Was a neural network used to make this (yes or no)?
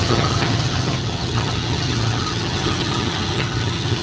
yes